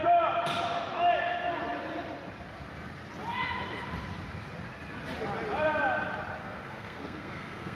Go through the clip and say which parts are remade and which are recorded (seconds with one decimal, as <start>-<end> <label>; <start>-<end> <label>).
0.0-6.4 recorded; 6.4-7.8 remade

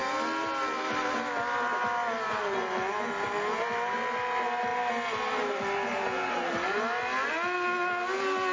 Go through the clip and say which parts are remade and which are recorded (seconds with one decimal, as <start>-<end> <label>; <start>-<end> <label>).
0.0-8.5 recorded

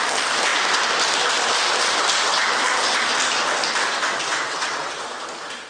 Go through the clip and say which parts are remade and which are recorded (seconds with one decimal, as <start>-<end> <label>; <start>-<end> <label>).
0.0-4.3 recorded; 4.3-5.0 remade; 5.0-5.7 recorded

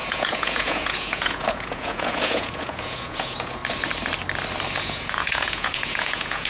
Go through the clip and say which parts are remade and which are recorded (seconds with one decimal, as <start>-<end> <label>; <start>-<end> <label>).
0.0-3.6 remade; 3.6-4.8 recorded; 4.8-6.5 remade

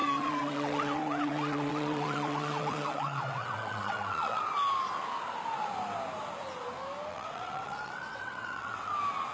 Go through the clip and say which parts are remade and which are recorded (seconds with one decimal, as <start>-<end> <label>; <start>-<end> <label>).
0.0-4.4 remade; 4.4-7.1 recorded; 7.1-8.9 remade; 8.9-9.3 recorded

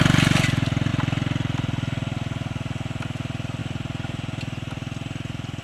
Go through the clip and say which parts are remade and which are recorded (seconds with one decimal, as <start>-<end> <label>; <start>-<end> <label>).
0.0-5.6 recorded

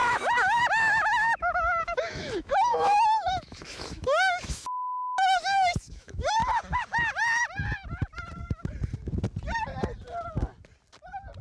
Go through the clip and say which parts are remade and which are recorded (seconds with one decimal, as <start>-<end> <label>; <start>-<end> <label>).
0.0-6.4 remade; 6.4-11.4 recorded

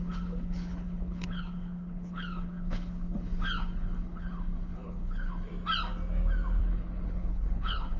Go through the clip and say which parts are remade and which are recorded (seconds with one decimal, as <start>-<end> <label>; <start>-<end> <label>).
0.0-5.5 remade; 5.5-6.6 recorded; 6.6-8.0 remade